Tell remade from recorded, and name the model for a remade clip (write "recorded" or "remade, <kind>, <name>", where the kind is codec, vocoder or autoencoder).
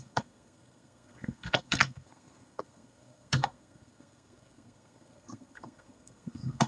remade, codec, SNAC